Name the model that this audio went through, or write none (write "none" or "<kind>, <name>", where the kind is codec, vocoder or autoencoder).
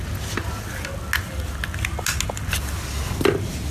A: none